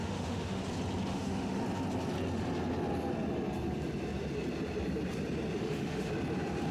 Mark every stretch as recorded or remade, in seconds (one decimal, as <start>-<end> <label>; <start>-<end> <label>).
0.0-0.6 remade; 0.6-1.1 recorded; 1.1-1.6 remade; 1.6-5.6 recorded; 5.6-6.1 remade; 6.1-6.7 recorded